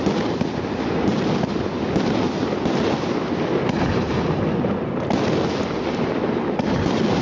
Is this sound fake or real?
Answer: real